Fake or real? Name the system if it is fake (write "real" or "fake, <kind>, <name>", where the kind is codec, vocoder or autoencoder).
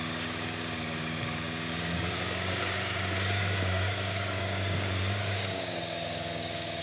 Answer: fake, codec, DAC